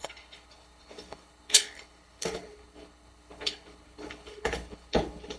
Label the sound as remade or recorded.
remade